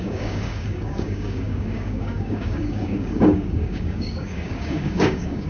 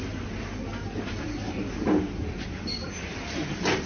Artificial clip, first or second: first